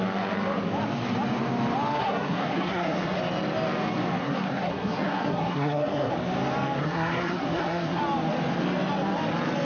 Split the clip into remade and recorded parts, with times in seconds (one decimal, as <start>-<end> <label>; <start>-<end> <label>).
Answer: 0.0-2.0 recorded; 2.0-3.2 remade; 3.2-4.2 recorded; 4.2-6.1 remade; 6.1-6.8 recorded; 6.8-8.0 remade; 8.0-9.6 recorded